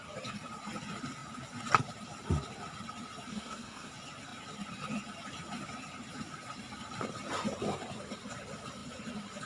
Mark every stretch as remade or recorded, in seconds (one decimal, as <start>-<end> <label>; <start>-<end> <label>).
0.0-3.3 recorded; 3.3-3.9 remade; 3.9-9.5 recorded